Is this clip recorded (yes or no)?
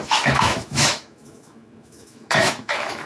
no